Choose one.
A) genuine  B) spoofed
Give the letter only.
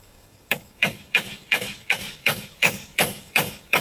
B